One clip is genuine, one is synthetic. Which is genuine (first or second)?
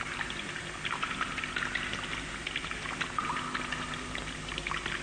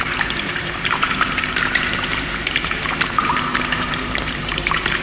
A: first